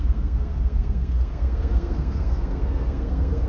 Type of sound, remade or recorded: remade